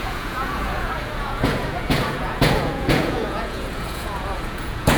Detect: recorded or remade remade